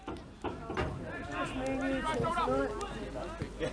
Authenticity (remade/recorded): recorded